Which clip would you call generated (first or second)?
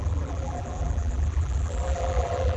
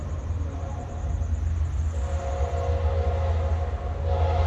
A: first